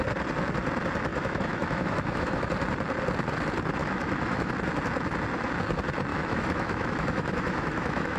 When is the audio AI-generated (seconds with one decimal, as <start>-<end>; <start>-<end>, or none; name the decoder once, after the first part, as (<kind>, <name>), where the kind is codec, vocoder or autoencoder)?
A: 1.1-2.4 (autoencoder, DAC-VAE); 3.8-4.5; 6.1-8.2